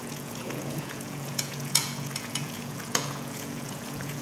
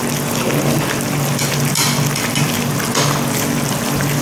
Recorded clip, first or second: second